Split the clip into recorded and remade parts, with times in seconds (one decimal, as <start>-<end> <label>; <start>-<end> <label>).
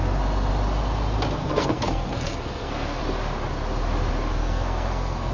0.0-1.4 recorded; 1.4-3.0 remade; 3.0-4.4 recorded; 4.4-5.3 remade